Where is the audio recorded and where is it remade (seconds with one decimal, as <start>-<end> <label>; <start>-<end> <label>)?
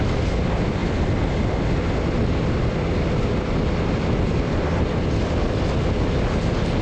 0.0-6.8 recorded